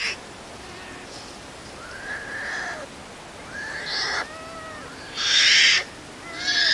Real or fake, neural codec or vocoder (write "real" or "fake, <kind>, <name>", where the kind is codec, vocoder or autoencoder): real